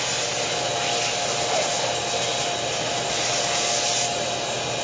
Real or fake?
real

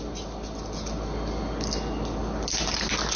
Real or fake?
real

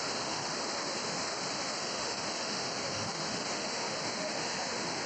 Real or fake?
fake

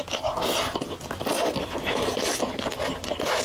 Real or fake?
real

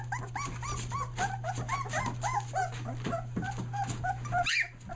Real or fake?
real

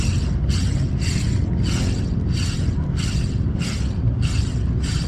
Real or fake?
real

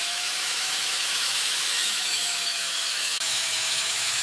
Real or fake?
fake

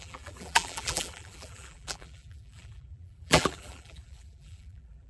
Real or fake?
fake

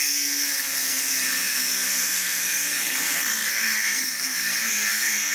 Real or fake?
fake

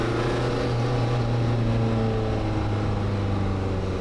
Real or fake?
real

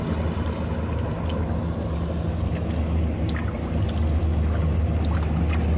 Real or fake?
real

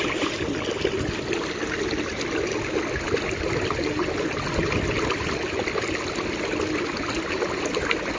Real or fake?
real